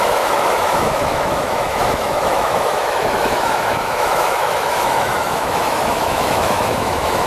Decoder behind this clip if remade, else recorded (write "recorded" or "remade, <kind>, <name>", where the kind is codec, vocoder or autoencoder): remade, autoencoder, DAC-VAE